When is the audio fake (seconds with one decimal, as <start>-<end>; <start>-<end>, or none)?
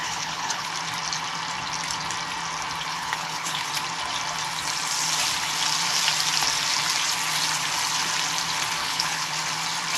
0.0-0.7; 2.9-3.7; 8.8-9.3